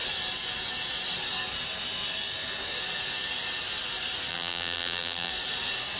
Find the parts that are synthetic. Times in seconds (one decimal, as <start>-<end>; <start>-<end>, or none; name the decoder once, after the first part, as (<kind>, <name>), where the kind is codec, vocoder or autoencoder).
4.3-5.3 (vocoder, BigVGAN v2)